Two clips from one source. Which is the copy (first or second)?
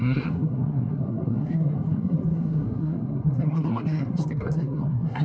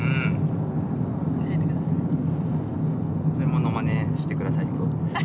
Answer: first